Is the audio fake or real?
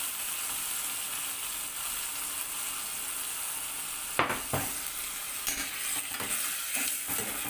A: real